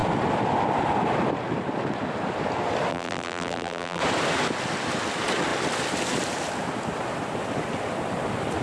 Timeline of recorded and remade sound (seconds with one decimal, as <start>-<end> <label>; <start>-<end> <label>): 0.0-2.9 recorded; 2.9-4.0 remade; 4.0-8.6 recorded